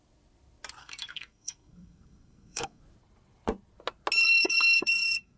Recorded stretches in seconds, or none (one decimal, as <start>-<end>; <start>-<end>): 0.0-0.8; 2.8-4.2